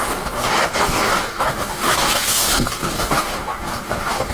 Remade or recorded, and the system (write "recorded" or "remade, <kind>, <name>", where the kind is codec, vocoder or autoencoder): remade, codec, DAC